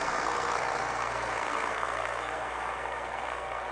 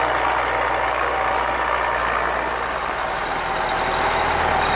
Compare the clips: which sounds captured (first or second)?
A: second